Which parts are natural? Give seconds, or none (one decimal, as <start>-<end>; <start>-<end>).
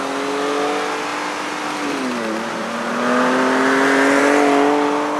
0.0-5.2